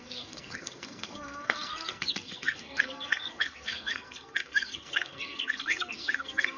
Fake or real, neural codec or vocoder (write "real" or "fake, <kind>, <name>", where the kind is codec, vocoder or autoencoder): fake, codec, SNAC